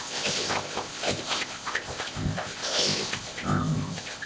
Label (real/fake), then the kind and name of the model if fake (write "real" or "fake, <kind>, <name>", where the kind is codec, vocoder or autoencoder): fake, codec, ZipCodec